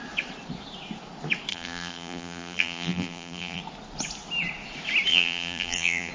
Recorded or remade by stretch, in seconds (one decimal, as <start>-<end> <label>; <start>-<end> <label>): 0.0-1.5 recorded; 1.5-3.6 remade; 3.6-5.1 recorded; 5.1-6.1 remade